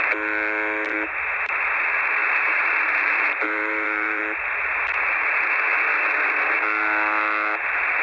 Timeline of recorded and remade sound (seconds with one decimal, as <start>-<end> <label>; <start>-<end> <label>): 0.0-2.2 recorded; 2.2-4.2 remade; 4.2-8.0 recorded